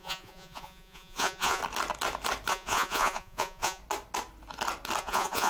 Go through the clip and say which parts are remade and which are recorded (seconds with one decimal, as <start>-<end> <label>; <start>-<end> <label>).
0.0-1.6 remade; 1.6-2.5 recorded; 2.5-3.8 remade; 3.8-5.0 recorded; 5.0-5.5 remade